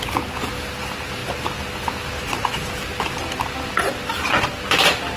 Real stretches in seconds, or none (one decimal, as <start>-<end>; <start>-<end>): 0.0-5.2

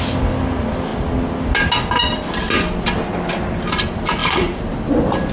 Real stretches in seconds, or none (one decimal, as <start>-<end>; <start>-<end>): 0.0-5.3

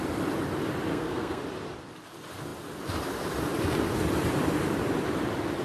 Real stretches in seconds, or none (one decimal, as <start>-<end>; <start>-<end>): 0.0-0.9; 1.4-5.6

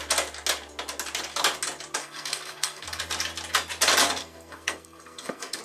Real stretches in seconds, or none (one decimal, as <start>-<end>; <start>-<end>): 0.0-2.0; 3.0-4.2

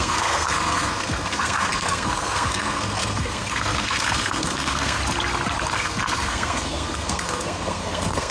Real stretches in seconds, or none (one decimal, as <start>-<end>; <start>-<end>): 5.0-5.7

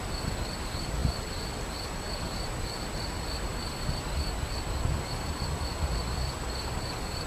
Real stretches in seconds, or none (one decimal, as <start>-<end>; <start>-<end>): 0.0-7.3

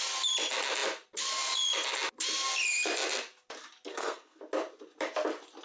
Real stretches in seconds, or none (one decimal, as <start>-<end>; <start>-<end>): 0.0-3.9; 4.4-5.6

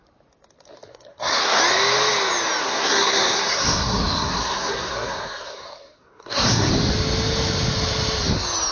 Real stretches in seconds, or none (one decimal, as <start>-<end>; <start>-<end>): 0.0-0.9; 1.6-2.6; 6.7-8.7